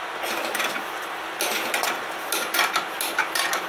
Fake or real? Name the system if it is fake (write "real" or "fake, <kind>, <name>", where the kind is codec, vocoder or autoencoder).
real